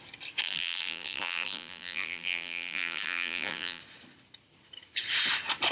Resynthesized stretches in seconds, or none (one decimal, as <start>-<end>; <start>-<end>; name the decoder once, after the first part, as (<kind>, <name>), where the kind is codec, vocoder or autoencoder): 0.4-3.8 (vocoder, BigVGAN v2)